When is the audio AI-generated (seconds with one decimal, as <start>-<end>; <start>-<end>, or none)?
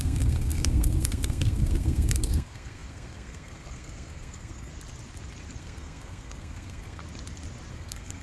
0.0-4.7; 5.6-7.0; 7.7-8.2